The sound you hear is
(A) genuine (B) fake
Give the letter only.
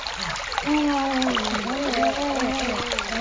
A